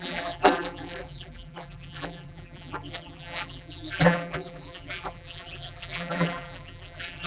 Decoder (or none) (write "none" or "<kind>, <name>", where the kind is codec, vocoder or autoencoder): vocoder, BigVGAN v2